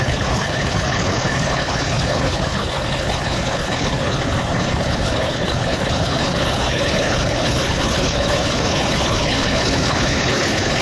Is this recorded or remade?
remade